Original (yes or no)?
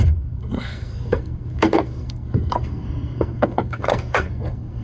no